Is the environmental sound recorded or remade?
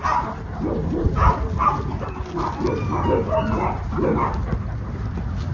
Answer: recorded